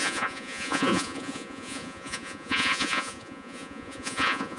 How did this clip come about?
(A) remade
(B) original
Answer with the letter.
A